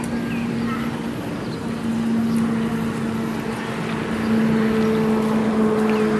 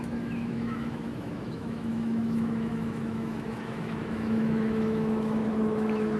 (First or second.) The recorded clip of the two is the first